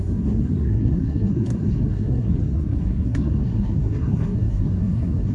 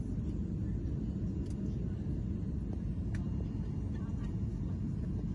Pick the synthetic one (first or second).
first